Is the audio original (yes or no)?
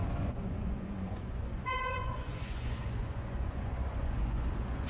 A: no